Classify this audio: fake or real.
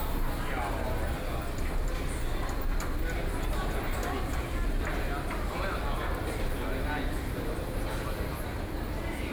real